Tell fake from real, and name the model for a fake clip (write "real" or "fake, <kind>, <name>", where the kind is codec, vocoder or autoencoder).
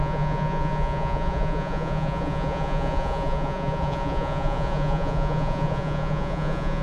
fake, vocoder, Vocos